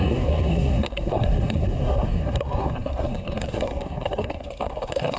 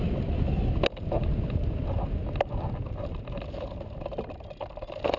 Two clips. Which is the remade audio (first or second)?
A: first